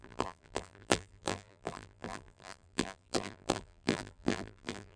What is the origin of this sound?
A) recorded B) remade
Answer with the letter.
B